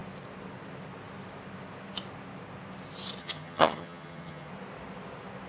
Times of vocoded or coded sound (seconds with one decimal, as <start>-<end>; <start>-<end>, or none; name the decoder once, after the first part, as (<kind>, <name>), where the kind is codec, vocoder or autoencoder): 3.2-4.5 (vocoder, HiFi-GAN)